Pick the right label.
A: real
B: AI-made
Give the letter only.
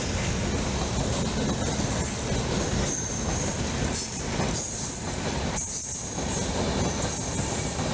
A